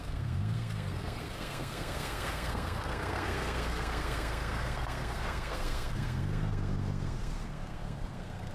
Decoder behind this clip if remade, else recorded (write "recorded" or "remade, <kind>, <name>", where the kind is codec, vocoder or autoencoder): remade, codec, SNAC